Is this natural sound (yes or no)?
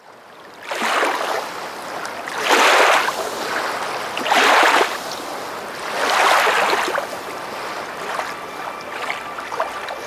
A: yes